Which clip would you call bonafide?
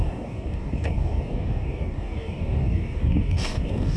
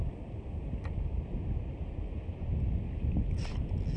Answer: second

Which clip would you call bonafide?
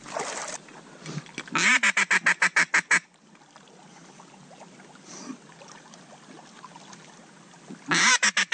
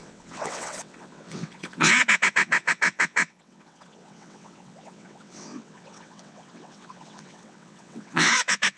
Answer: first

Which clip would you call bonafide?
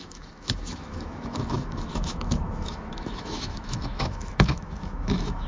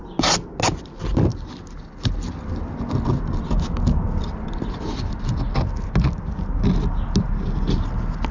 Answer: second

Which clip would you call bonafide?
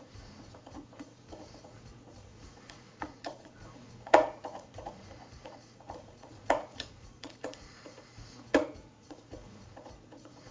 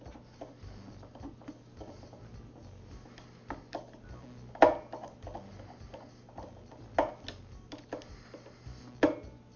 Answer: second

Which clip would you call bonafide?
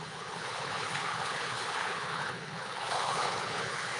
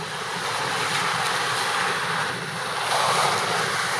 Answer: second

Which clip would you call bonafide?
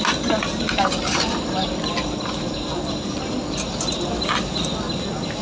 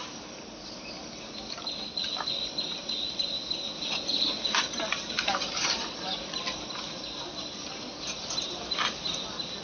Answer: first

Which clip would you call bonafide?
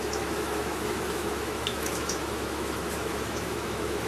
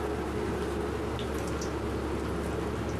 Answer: second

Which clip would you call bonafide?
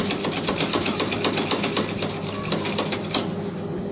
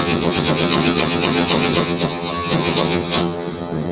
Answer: first